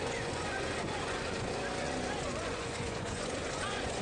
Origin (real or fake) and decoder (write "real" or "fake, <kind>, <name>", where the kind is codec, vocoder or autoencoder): fake, vocoder, Vocos